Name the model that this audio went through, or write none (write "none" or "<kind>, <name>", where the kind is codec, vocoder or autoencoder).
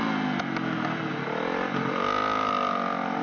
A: none